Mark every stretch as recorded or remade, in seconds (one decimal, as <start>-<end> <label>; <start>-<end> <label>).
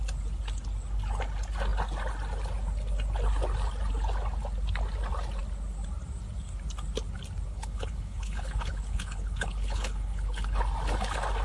0.0-7.5 recorded; 7.5-10.6 remade; 10.6-11.4 recorded